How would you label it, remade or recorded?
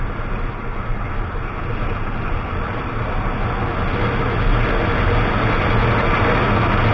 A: recorded